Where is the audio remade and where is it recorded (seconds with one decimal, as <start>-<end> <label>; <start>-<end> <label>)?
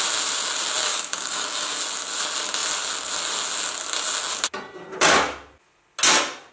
0.0-0.9 recorded; 0.9-1.8 remade; 1.8-6.5 recorded